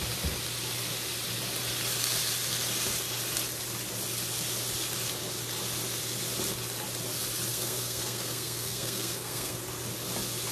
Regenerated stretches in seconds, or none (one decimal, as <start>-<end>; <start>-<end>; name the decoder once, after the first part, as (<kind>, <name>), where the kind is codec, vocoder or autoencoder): 7.5-9.6 (codec, SNAC)